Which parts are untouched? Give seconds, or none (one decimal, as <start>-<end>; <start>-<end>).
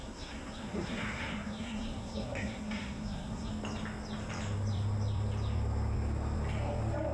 3.5-7.1